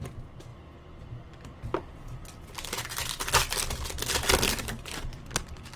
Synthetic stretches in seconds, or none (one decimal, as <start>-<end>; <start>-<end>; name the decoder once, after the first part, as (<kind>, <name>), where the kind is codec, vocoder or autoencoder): none